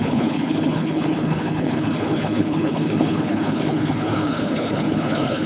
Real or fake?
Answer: fake